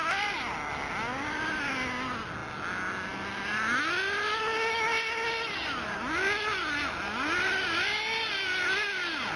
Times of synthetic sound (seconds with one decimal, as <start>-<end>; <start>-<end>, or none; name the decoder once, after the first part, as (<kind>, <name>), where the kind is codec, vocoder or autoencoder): none